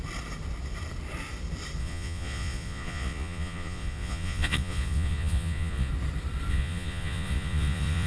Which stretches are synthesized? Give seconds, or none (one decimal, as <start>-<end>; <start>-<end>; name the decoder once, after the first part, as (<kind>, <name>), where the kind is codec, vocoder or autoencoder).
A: 1.8-5.9 (vocoder, Vocos); 6.5-8.1